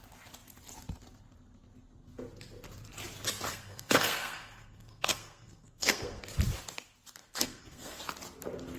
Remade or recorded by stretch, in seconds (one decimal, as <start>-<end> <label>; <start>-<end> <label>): 0.0-3.5 recorded; 3.5-6.2 remade; 6.2-7.2 recorded; 7.2-8.0 remade; 8.0-8.8 recorded